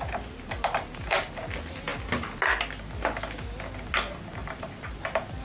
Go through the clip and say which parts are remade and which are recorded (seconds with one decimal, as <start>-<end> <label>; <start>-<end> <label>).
0.0-4.4 recorded; 4.4-5.0 remade; 5.0-5.4 recorded